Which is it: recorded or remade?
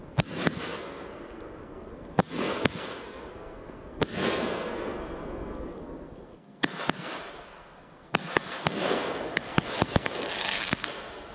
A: remade